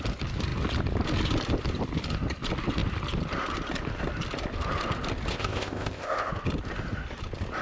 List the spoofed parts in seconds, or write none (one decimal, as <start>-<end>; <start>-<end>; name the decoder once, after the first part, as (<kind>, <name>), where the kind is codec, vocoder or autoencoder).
5.3-6.3 (codec, ZipCodec)